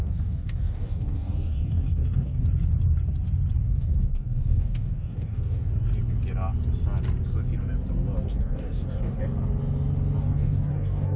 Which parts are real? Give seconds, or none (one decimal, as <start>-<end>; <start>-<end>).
2.4-3.6; 5.7-8.2; 9.2-10.2